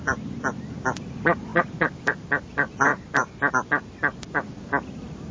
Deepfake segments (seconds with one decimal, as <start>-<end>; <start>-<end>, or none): none